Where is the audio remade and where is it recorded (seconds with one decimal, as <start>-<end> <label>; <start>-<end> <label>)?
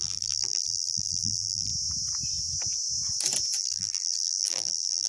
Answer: 0.0-1.7 remade; 1.7-3.6 recorded; 3.6-5.1 remade